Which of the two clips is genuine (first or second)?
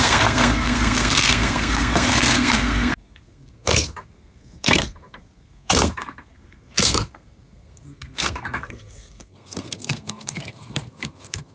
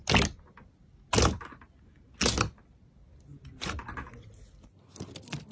second